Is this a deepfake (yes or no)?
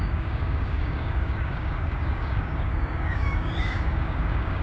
yes